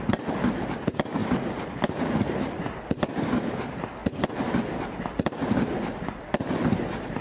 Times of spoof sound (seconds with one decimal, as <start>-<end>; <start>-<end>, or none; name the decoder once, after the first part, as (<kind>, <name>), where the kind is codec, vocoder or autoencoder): none